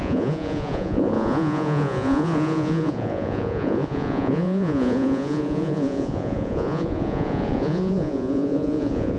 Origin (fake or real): fake